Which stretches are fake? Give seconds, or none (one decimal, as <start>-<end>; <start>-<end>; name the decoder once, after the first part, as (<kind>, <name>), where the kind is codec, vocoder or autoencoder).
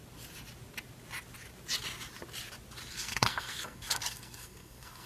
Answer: 2.9-5.1 (codec, SNAC)